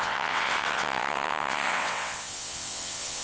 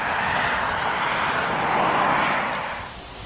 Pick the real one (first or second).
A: second